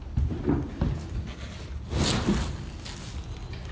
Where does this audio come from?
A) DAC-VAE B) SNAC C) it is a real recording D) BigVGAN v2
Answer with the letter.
C